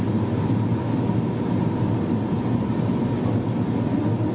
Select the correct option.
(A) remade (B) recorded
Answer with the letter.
B